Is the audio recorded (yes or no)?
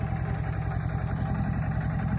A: yes